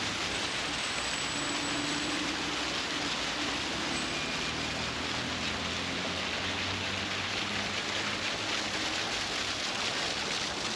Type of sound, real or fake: real